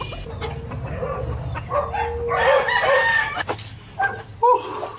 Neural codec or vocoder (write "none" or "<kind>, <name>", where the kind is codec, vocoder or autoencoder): none